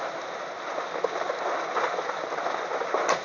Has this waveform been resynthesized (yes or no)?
no